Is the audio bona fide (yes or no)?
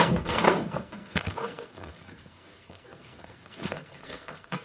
no